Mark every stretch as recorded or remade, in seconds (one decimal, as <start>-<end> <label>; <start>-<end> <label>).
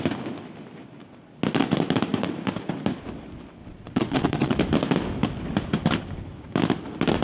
0.0-3.6 recorded; 3.6-4.6 remade; 4.6-7.2 recorded